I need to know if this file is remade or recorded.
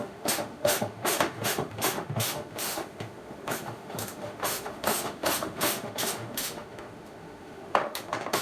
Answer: remade